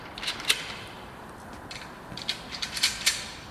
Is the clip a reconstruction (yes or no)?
yes